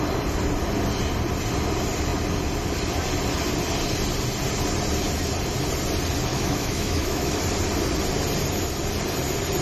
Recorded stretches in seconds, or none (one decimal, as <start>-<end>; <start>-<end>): 0.0-6.3; 7.4-9.6